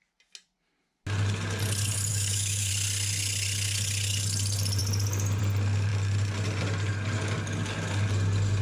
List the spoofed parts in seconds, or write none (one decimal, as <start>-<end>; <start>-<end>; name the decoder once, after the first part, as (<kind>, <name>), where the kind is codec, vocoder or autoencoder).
2.1-2.7 (autoencoder, DAC-VAE)

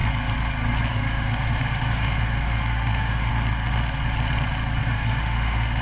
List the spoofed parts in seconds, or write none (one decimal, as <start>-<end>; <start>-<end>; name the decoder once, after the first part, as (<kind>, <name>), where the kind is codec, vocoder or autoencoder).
0.9-3.3 (autoencoder, DAC-VAE); 4.8-5.8

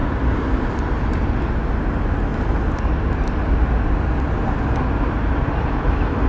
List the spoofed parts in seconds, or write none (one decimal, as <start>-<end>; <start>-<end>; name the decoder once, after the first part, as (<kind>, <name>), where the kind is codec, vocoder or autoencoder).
none